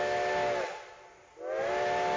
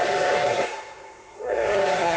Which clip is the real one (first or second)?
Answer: first